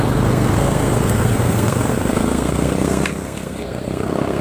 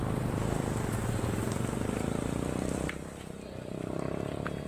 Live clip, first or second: second